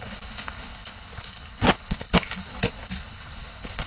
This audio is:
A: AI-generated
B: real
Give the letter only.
A